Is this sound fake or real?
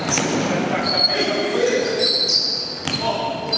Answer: real